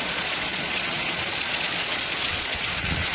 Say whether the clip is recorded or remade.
remade